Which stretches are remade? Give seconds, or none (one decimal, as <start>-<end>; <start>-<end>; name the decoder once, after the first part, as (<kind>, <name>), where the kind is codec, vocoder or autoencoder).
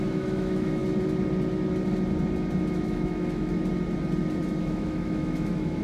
0.0-0.8 (autoencoder, DAC-VAE); 2.7-3.6; 4.6-5.8